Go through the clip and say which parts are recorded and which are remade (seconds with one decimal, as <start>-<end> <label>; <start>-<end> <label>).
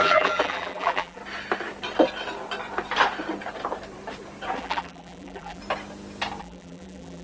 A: 0.0-1.2 remade; 1.2-4.6 recorded; 4.6-5.6 remade; 5.6-6.4 recorded; 6.4-7.2 remade